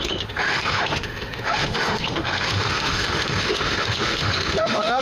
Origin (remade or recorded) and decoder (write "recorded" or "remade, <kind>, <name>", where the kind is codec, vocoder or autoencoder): remade, autoencoder, DAC-VAE